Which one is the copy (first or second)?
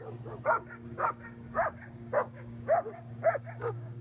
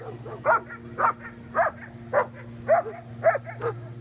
first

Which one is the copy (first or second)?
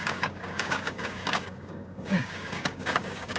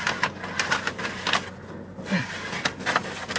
first